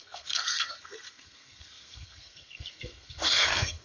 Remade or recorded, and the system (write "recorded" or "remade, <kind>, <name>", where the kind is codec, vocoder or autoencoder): remade, codec, SNAC